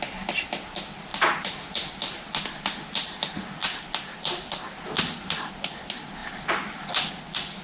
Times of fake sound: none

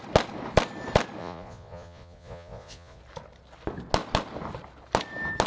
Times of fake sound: 1.2-3.0 (vocoder, Vocos)

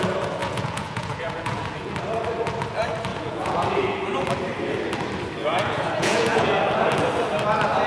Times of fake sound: 0.4-1.9 (vocoder, Vocos); 3.1-4.0; 5.4-6.5

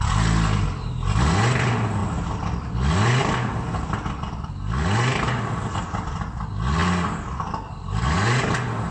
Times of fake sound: none

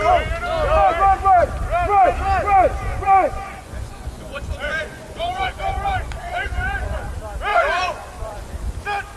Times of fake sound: 2.9-7.1 (vocoder, Vocos); 7.5-8.7